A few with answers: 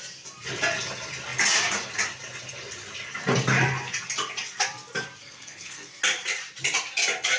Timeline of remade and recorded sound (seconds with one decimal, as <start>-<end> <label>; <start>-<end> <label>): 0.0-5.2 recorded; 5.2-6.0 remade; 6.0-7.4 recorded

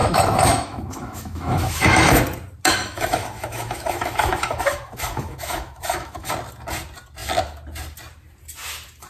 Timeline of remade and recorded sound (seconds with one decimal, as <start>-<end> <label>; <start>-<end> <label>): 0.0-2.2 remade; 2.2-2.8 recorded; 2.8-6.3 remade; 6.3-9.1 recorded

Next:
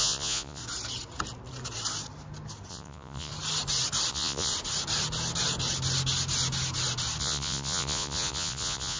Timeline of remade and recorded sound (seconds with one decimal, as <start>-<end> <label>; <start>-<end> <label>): 0.0-0.6 remade; 0.6-2.7 recorded; 2.7-3.3 remade; 3.3-4.1 recorded; 4.1-4.5 remade; 4.5-7.2 recorded; 7.2-9.0 remade

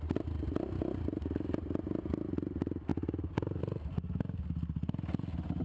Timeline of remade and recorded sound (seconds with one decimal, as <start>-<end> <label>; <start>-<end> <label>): 0.0-2.9 recorded; 2.9-3.6 remade; 3.6-5.6 recorded

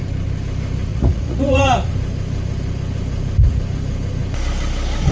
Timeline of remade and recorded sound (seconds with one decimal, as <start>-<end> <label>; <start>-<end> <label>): 0.0-0.9 recorded; 0.9-1.9 remade; 1.9-5.1 recorded

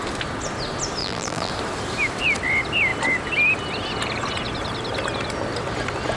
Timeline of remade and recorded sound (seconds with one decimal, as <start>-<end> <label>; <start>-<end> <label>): 0.0-1.0 recorded; 1.0-1.5 remade; 1.5-6.2 recorded